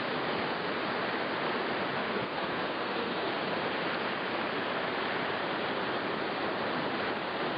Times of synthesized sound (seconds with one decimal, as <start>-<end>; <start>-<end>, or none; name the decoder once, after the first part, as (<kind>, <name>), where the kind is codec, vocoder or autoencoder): 2.0-3.3 (codec, SNAC)